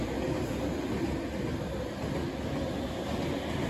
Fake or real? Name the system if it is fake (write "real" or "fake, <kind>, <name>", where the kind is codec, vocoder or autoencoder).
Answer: real